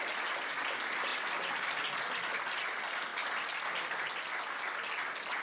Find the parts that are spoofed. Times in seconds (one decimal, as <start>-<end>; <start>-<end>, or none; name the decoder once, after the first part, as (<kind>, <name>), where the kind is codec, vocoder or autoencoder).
none